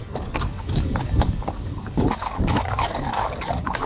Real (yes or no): no